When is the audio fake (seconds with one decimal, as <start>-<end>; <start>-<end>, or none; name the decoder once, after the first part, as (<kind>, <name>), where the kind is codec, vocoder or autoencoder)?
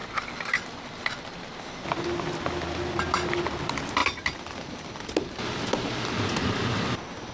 none